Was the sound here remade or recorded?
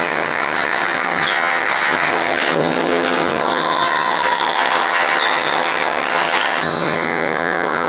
remade